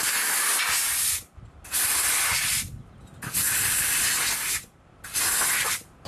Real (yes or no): yes